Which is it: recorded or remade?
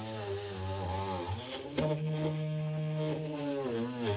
recorded